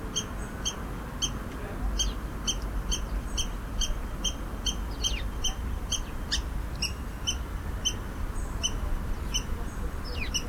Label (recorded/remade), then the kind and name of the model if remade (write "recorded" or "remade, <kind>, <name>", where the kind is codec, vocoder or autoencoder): recorded